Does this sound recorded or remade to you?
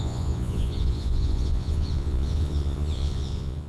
remade